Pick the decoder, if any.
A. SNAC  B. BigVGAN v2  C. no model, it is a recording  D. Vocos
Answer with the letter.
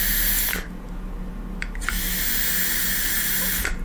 C